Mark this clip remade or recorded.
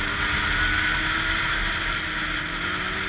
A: recorded